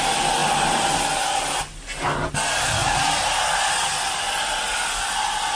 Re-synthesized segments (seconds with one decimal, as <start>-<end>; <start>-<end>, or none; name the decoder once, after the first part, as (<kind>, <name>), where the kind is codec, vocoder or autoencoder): 2.8-3.6 (vocoder, BigVGAN v2)